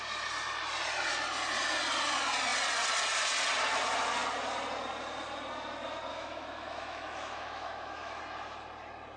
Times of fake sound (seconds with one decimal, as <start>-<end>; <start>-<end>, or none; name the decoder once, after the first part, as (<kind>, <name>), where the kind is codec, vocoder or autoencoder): 6.1-8.2 (autoencoder, DAC-VAE)